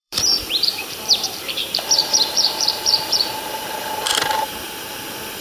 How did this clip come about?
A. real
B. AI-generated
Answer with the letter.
B